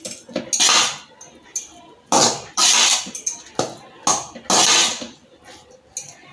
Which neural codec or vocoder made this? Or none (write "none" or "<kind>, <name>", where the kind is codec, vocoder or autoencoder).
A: none